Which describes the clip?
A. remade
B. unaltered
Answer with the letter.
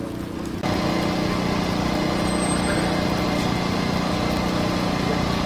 B